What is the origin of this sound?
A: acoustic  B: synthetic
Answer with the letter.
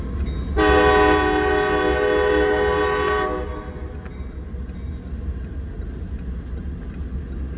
A